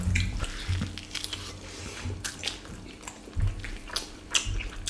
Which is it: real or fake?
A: real